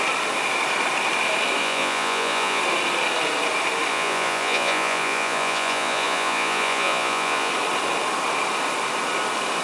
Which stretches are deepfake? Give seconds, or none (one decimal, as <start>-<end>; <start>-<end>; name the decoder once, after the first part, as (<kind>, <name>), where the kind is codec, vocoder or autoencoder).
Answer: 1.6-2.6 (vocoder, Vocos); 3.9-7.5